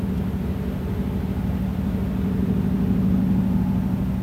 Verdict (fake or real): real